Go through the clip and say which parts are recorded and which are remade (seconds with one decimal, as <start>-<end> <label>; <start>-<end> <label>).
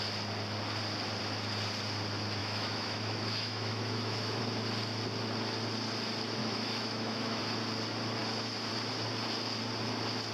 0.0-2.4 recorded; 2.4-4.4 remade; 4.4-6.4 recorded; 6.4-7.4 remade; 7.4-10.3 recorded